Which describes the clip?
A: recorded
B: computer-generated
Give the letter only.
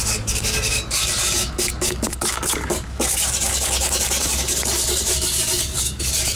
B